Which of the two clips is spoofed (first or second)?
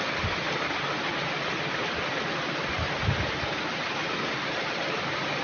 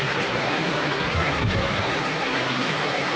second